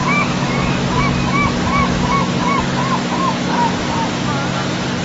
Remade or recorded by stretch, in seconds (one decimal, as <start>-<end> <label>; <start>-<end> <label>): 0.0-3.5 remade; 3.5-5.0 recorded